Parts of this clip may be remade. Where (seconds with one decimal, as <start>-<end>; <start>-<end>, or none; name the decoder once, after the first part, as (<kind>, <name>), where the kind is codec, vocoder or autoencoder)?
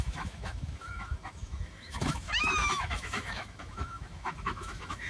0.0-5.1 (autoencoder, DAC-VAE)